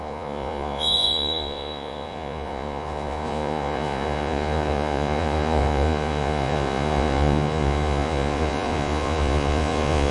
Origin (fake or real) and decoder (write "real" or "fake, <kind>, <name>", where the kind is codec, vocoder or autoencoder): fake, vocoder, Vocos